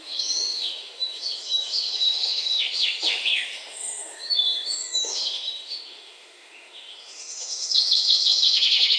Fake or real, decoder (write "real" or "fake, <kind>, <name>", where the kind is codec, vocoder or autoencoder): fake, autoencoder, DAC-VAE